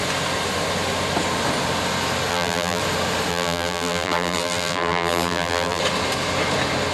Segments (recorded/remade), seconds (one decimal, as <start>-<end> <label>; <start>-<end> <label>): 0.0-2.3 recorded; 2.3-2.8 remade; 2.8-3.3 recorded; 3.3-5.8 remade; 5.8-6.9 recorded